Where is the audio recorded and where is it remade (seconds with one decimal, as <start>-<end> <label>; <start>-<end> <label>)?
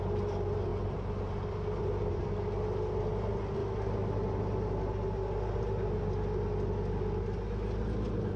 0.0-8.4 recorded